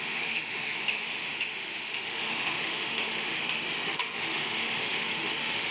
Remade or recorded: remade